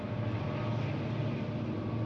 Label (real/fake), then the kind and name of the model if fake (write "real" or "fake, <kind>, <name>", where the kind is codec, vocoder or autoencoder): real